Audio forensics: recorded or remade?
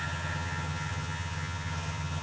remade